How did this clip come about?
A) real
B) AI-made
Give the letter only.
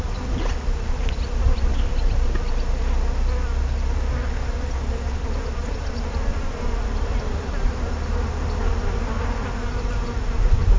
A